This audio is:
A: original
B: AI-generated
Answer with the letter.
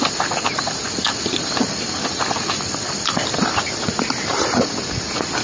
A